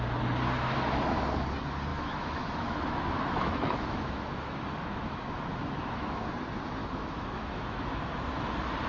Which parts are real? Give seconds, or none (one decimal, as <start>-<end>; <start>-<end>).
0.0-1.9; 6.2-6.8; 7.9-8.9